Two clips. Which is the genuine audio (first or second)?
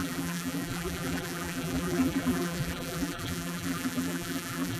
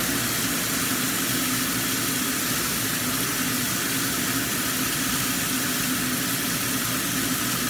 second